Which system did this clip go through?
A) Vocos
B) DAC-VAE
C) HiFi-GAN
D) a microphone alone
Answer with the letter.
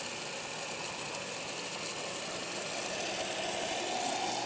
D